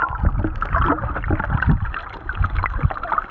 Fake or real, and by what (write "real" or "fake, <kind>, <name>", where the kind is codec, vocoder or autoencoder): real